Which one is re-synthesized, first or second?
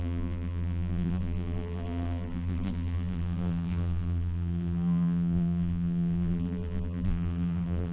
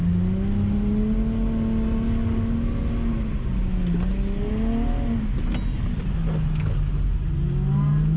first